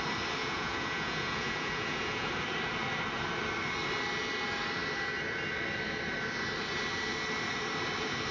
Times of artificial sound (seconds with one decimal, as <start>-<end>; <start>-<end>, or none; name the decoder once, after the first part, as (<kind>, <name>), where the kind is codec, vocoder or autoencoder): 0.4-2.3 (vocoder, Vocos)